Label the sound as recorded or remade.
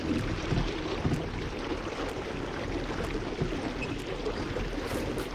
recorded